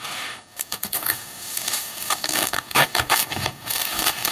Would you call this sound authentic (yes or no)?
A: no